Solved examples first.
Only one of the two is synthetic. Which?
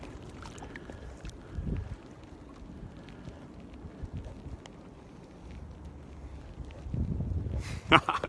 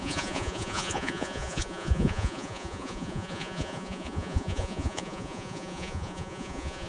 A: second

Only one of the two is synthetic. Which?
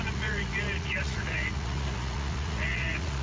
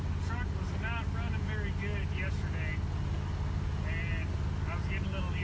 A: first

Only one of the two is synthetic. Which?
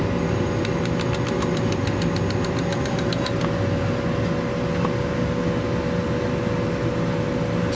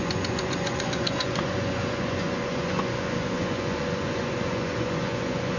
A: second